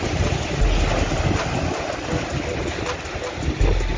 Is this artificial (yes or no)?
no